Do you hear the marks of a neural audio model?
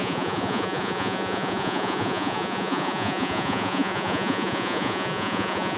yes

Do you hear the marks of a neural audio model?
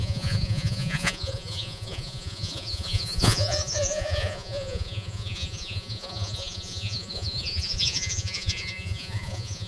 yes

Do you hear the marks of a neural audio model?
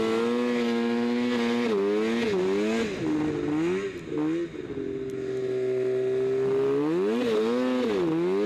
no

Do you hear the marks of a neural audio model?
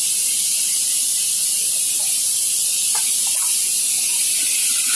no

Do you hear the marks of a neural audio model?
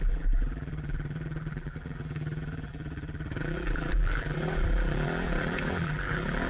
yes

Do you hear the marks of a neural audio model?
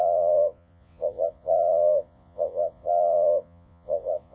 yes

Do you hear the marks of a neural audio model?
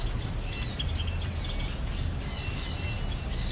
no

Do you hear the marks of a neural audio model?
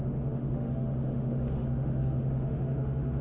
yes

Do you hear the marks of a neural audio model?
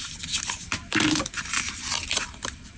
no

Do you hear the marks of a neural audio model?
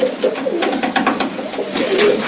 no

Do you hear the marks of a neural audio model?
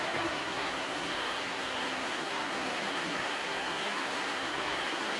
yes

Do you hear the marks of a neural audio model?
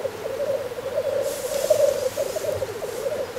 no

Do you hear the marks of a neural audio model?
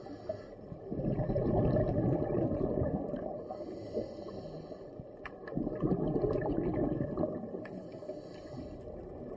no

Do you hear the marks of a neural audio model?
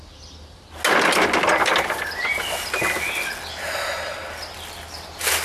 no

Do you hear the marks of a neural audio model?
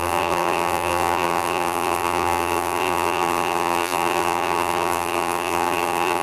yes